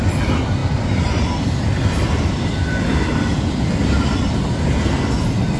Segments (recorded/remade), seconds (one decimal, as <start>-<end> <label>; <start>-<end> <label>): 0.0-0.6 recorded; 0.6-4.0 remade; 4.0-5.6 recorded